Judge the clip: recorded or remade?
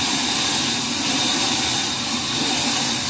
recorded